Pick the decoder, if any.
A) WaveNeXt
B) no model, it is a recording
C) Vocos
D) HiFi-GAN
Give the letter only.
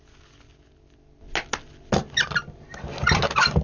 B